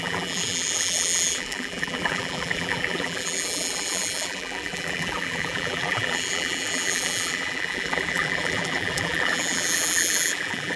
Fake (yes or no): yes